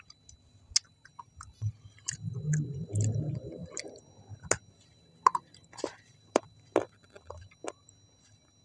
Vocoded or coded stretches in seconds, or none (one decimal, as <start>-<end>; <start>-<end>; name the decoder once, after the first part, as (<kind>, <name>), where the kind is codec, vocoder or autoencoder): 5.9-6.4 (vocoder, BigVGAN v2)